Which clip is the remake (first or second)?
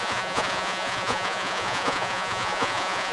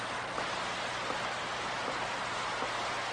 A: first